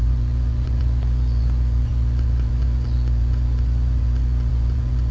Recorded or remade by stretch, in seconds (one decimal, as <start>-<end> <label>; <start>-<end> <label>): 0.0-5.1 remade